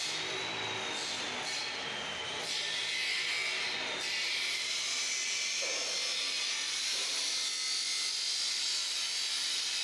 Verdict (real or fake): real